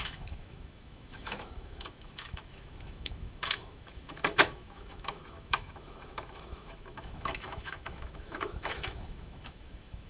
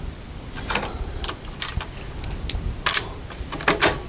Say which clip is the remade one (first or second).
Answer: first